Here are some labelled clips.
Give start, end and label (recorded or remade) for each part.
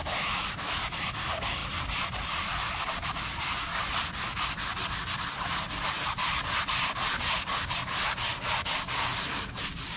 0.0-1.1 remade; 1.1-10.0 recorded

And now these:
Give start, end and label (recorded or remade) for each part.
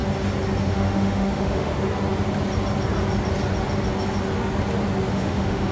0.0-0.6 recorded; 0.6-1.7 remade; 1.7-5.1 recorded; 5.1-5.7 remade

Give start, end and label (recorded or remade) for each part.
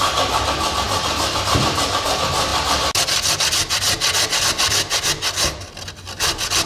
0.0-6.7 recorded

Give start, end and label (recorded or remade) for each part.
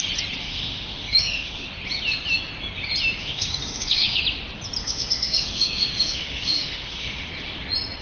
0.0-0.4 recorded; 0.4-1.7 remade; 1.7-3.2 recorded; 3.2-4.2 remade; 4.2-4.8 recorded; 4.8-7.3 remade; 7.3-8.0 recorded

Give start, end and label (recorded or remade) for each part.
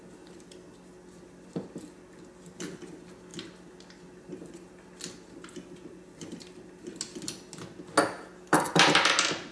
0.0-9.5 recorded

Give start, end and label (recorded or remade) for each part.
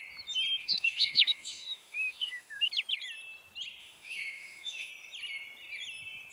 0.0-0.6 recorded; 0.6-2.7 remade; 2.7-3.8 recorded; 3.8-4.9 remade; 4.9-6.3 recorded